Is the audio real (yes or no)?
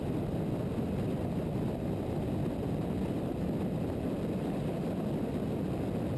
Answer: yes